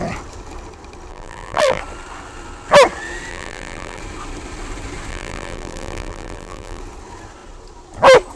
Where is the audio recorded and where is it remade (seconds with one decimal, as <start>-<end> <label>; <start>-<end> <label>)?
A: 0.0-1.1 recorded; 1.1-1.8 remade; 1.8-3.3 recorded; 3.3-4.0 remade; 4.0-5.1 recorded; 5.1-6.8 remade; 6.8-8.4 recorded